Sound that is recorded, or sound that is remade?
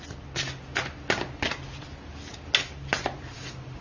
recorded